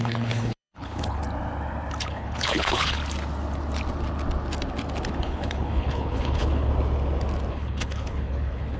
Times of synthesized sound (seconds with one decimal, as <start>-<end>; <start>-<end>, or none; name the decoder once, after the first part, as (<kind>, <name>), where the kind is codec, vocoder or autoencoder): 0.0-1.2 (codec, HILCodec); 2.0-3.0; 5.2-6.7; 7.5-8.8